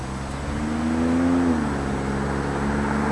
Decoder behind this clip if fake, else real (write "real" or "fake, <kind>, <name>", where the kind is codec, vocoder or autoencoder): real